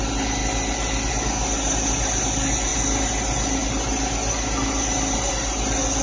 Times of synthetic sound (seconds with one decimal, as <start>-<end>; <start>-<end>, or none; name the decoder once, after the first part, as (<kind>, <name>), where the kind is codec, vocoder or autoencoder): none